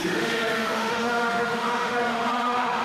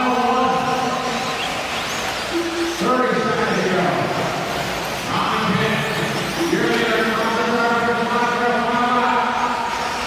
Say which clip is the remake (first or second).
first